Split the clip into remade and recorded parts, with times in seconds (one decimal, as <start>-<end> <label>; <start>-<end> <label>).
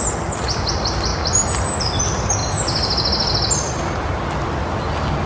0.0-5.3 recorded